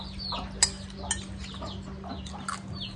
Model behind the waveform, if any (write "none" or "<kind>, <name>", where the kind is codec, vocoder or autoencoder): none